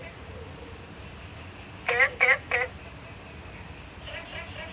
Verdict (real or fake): real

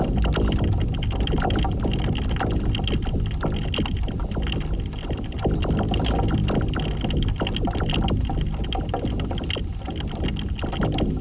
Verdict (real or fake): real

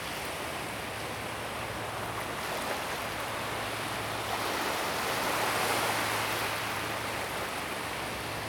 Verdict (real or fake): real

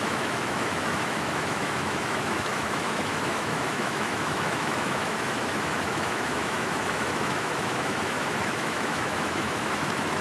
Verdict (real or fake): fake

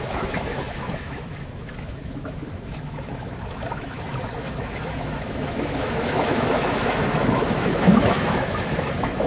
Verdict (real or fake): fake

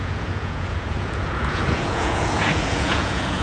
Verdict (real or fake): fake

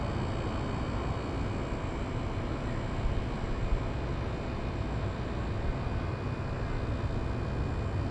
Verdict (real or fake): real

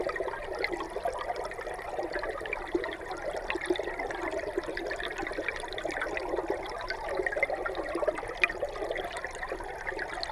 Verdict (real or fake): real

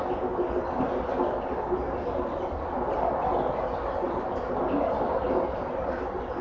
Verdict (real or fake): real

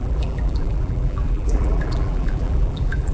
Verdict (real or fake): fake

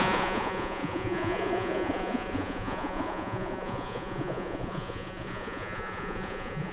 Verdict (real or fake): fake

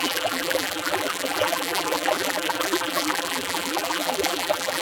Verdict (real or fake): fake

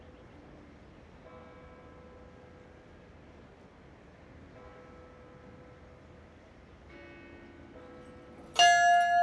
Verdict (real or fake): real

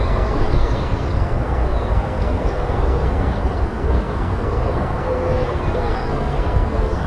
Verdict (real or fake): fake